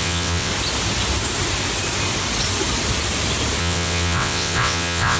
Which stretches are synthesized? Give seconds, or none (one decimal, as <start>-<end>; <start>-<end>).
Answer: 0.0-0.5; 3.6-5.2